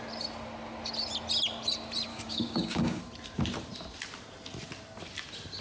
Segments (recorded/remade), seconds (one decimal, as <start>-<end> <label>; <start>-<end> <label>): 0.0-2.1 recorded; 2.1-3.0 remade; 3.0-5.6 recorded

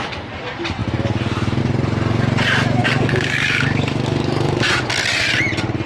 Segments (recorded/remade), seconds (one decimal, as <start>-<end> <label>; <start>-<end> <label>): 0.0-2.8 recorded; 2.8-4.7 remade; 4.7-5.9 recorded

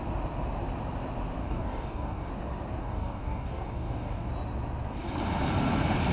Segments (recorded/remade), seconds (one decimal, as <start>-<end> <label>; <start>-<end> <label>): 0.0-1.4 recorded; 1.4-2.3 remade; 2.3-2.8 recorded; 2.8-4.3 remade; 4.3-6.1 recorded

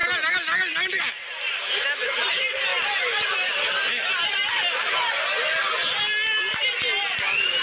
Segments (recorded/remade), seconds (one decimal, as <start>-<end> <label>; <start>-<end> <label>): 0.0-7.6 recorded

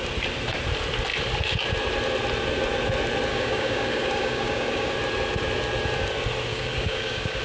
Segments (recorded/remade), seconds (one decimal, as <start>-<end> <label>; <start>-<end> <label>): 0.0-3.3 recorded; 3.3-4.9 remade; 4.9-6.5 recorded; 6.5-7.4 remade